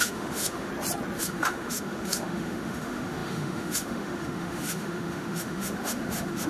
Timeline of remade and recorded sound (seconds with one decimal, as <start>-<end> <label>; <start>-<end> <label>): 0.0-0.7 remade; 0.7-1.2 recorded; 1.2-6.5 remade